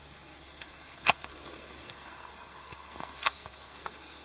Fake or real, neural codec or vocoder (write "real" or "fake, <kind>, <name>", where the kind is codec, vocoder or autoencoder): fake, codec, SNAC